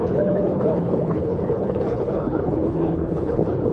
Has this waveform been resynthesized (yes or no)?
yes